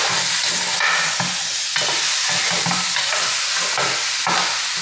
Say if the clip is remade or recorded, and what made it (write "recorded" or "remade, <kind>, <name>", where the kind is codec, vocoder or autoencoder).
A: recorded